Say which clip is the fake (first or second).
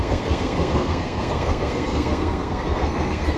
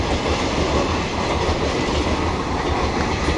first